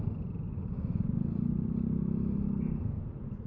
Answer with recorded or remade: recorded